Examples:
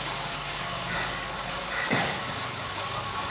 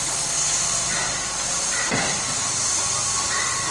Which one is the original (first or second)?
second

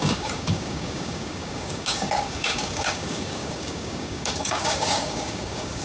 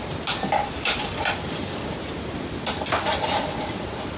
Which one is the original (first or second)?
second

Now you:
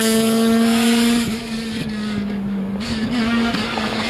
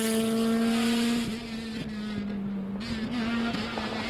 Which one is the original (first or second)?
second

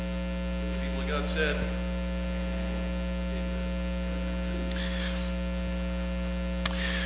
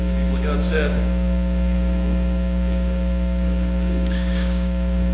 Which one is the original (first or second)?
first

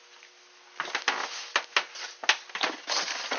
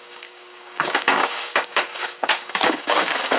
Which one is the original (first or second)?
first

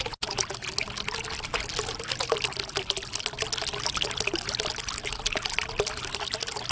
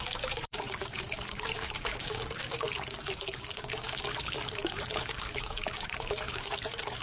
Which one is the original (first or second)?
first